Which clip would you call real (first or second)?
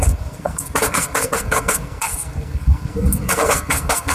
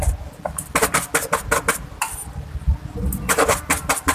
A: second